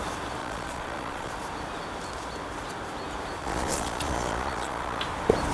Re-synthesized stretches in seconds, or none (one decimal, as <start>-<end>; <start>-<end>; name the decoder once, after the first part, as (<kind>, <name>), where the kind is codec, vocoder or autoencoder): 0.4-1.3 (vocoder, Vocos); 3.4-5.0